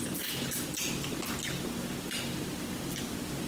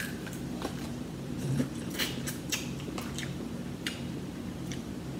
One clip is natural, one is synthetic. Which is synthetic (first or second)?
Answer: second